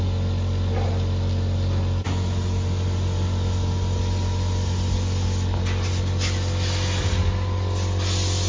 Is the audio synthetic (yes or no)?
no